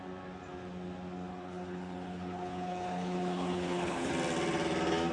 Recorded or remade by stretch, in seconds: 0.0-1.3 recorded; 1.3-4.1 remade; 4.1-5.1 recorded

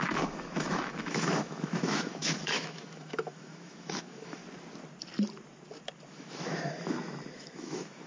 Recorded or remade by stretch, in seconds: 0.0-4.4 remade; 4.4-6.1 recorded; 6.1-8.1 remade

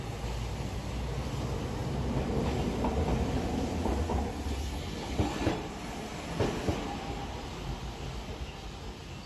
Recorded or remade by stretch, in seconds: 0.0-9.3 recorded